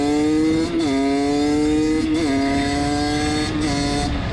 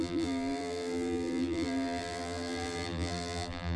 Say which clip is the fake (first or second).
second